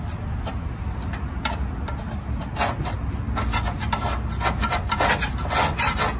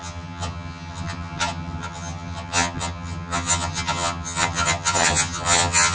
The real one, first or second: first